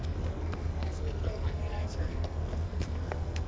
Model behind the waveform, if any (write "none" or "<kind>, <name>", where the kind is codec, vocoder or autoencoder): codec, SNAC